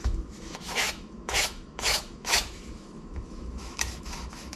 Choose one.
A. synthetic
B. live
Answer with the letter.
A